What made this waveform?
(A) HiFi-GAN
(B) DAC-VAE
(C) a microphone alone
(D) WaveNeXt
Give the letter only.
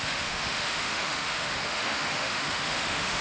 B